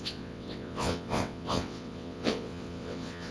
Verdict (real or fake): fake